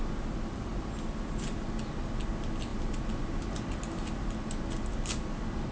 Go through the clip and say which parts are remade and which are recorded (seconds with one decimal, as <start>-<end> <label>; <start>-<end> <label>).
0.0-5.7 recorded